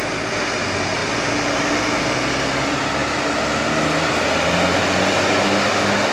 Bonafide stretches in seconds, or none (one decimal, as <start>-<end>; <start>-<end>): 0.0-6.1